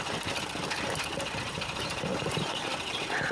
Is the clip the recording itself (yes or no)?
yes